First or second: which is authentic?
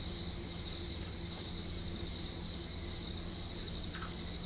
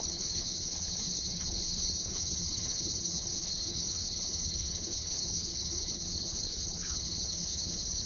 first